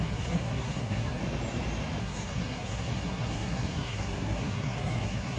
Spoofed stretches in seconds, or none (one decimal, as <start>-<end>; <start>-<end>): 0.0-1.2; 2.0-5.4